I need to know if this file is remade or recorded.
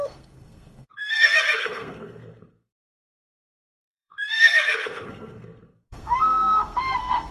remade